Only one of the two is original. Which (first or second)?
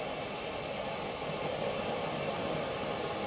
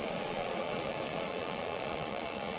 first